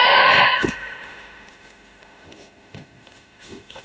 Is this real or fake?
fake